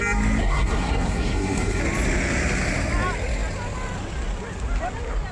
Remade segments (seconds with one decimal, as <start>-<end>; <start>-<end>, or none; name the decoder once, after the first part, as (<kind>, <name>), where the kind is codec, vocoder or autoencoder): 0.4-1.8 (codec, SNAC)